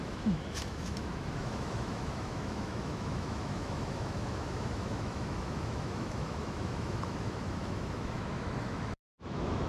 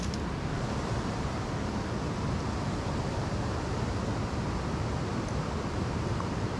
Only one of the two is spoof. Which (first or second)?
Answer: first